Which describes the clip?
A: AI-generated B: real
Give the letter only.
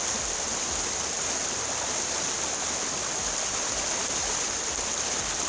B